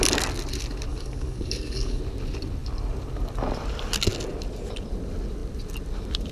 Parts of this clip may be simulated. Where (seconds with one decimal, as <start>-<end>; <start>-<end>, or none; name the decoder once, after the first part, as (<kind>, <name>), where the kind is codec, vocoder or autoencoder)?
0.9-2.0 (codec, DAC)